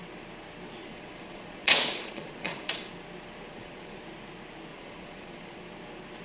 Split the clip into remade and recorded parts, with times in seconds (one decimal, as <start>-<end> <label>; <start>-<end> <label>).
0.0-0.8 recorded; 0.8-2.9 remade; 2.9-3.5 recorded; 3.5-4.0 remade; 4.0-4.7 recorded; 4.7-5.6 remade; 5.6-6.2 recorded